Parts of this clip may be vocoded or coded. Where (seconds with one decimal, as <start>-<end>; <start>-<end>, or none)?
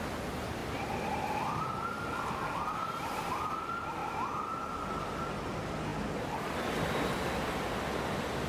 0.6-3.3; 4.0-5.1